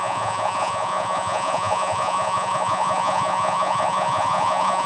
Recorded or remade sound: remade